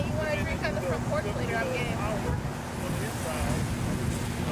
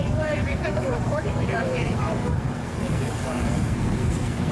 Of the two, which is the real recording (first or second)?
first